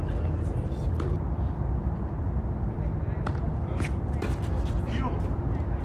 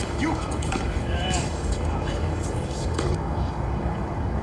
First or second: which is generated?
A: second